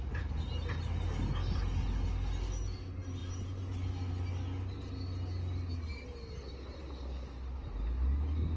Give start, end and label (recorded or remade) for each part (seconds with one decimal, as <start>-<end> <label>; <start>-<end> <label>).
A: 0.0-8.6 recorded

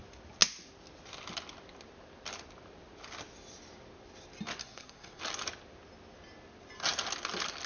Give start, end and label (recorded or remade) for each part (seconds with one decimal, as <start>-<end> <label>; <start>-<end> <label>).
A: 0.0-4.6 recorded; 4.6-5.2 remade; 5.2-7.7 recorded

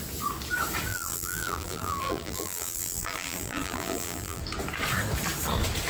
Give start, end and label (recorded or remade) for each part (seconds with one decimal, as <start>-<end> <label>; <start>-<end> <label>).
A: 0.0-0.9 recorded; 0.9-4.4 remade; 4.4-5.9 recorded

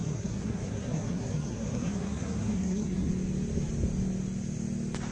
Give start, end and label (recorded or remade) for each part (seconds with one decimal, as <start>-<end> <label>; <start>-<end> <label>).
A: 0.0-3.1 remade; 3.1-5.1 recorded

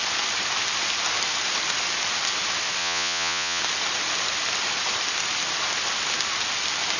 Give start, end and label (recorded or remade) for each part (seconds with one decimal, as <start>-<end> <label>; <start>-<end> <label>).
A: 0.0-2.8 recorded; 2.8-3.6 remade; 3.6-7.0 recorded

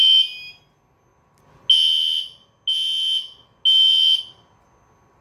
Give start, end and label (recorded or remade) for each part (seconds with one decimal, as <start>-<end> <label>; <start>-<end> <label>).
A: 0.0-5.2 recorded